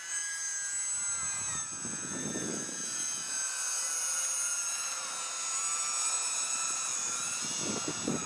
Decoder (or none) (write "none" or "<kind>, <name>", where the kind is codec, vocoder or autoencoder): none